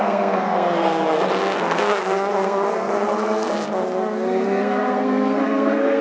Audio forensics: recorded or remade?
remade